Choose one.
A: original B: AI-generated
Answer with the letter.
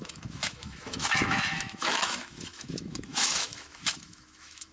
B